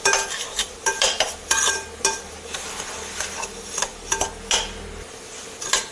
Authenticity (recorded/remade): recorded